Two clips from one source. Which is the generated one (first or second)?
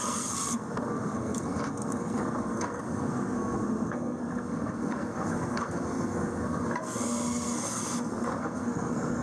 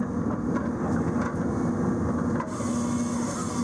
first